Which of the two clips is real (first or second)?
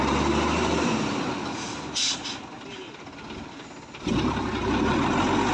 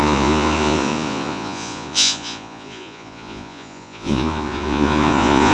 first